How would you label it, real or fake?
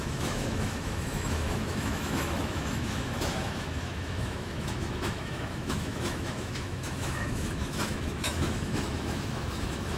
fake